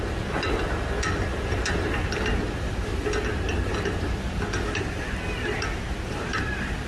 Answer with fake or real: real